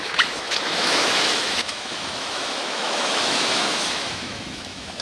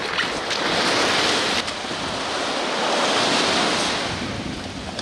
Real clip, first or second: second